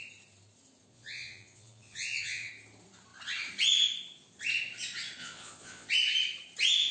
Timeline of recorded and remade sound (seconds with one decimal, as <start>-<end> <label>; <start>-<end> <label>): 0.0-0.9 recorded; 0.9-2.5 remade; 2.5-5.2 recorded; 5.2-5.9 remade; 5.9-6.9 recorded